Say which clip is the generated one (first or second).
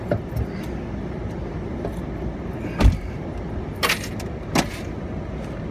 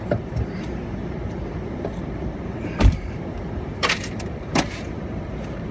second